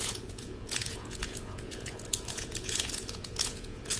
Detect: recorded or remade remade